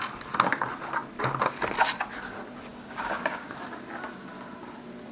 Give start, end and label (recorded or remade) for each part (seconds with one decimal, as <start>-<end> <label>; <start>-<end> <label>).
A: 0.0-2.7 recorded; 2.7-3.5 remade; 3.5-5.1 recorded